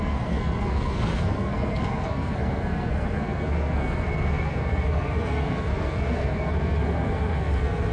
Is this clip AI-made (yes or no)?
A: yes